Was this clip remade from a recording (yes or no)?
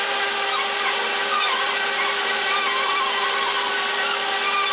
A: no